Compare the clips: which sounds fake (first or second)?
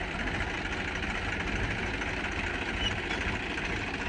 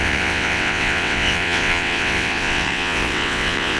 second